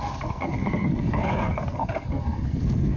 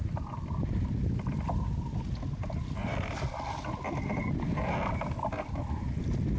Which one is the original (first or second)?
second